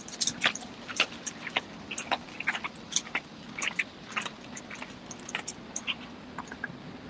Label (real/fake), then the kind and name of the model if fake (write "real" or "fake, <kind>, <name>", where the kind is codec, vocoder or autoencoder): real